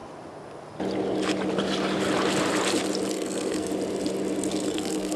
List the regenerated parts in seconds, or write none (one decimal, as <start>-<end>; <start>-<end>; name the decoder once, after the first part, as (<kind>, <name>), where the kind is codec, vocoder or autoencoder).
3.1-3.7 (codec, SNAC); 4.5-5.2